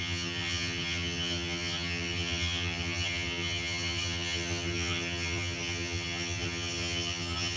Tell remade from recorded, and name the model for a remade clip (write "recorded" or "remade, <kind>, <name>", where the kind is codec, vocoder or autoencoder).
remade, vocoder, HiFi-GAN